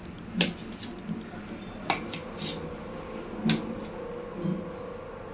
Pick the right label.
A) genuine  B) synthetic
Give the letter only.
A